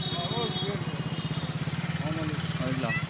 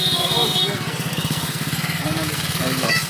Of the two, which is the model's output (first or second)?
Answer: second